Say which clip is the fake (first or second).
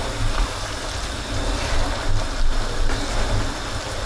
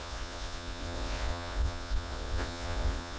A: second